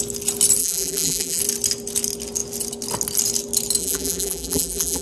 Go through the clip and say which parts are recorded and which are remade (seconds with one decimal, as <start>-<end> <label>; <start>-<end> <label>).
0.0-0.6 recorded; 0.6-1.4 remade; 1.4-3.8 recorded; 3.8-5.0 remade